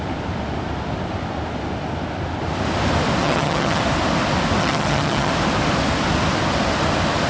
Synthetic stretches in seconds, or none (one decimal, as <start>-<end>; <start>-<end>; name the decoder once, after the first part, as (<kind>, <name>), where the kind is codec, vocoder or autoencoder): 3.2-3.8 (vocoder, HiFi-GAN); 4.6-5.3